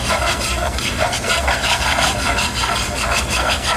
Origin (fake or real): fake